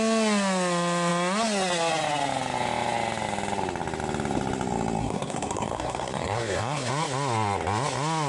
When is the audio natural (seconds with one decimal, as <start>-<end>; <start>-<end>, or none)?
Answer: 0.0-5.0; 6.9-8.3